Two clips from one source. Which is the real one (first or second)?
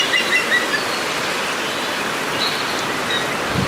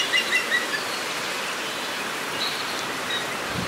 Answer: first